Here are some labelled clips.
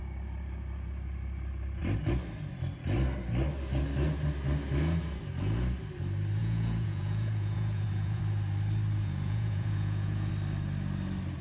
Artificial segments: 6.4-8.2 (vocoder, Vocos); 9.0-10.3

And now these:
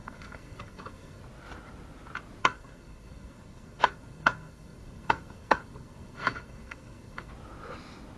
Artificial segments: 0.0-1.2 (codec, SNAC); 2.4-7.3

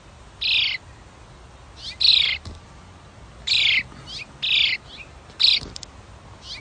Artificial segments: none

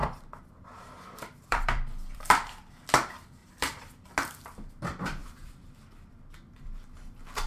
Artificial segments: 0.0-2.7 (vocoder, BigVGAN v2); 3.4-4.0; 5.2-5.9

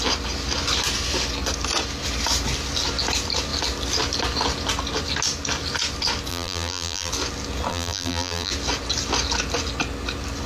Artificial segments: 6.3-7.1 (vocoder, BigVGAN v2); 7.7-8.5

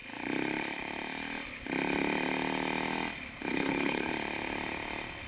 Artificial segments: 3.5-4.1 (codec, HILCodec)